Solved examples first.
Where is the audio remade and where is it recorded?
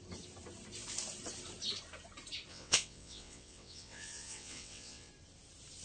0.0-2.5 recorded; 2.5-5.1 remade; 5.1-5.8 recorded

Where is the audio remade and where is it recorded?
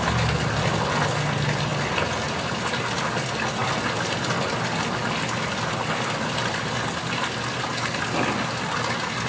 0.0-9.3 recorded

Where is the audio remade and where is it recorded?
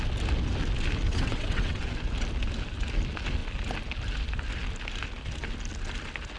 0.0-1.1 recorded; 1.1-1.8 remade; 1.8-6.4 recorded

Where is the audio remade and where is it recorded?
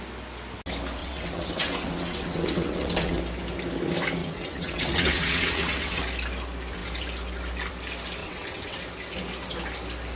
0.0-1.0 recorded; 1.0-3.2 remade; 3.2-4.2 recorded; 4.2-6.0 remade; 6.0-8.2 recorded; 8.2-8.8 remade; 8.8-10.2 recorded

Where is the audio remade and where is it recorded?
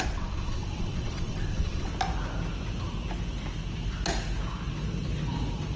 0.0-1.9 remade; 1.9-5.8 recorded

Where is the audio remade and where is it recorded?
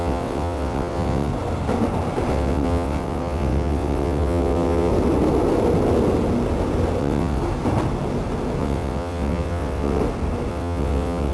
0.0-1.3 remade; 1.3-2.3 recorded; 2.3-4.9 remade; 4.9-7.0 recorded; 7.0-7.4 remade; 7.4-8.6 recorded; 8.6-10.0 remade; 10.0-10.5 recorded; 10.5-11.3 remade